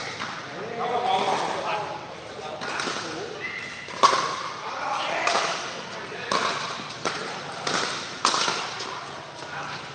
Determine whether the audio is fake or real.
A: real